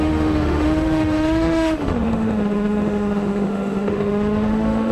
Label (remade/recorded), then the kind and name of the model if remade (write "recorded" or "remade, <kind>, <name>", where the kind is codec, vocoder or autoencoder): remade, autoencoder, DAC-VAE